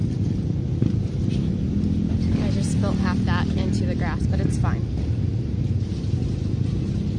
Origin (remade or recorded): recorded